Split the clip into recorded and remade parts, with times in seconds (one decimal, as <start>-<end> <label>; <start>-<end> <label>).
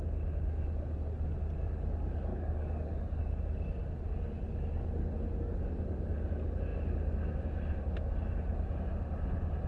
0.0-2.3 recorded; 2.3-3.2 remade; 3.2-9.7 recorded